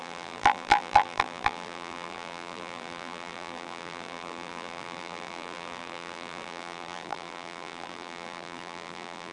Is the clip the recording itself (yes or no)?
no